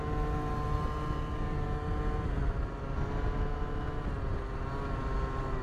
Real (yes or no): yes